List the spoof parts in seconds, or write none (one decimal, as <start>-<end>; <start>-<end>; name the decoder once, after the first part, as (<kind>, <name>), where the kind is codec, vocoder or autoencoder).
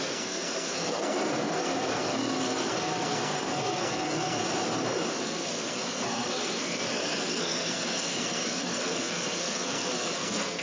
0.0-4.4 (codec, SNAC); 5.1-10.6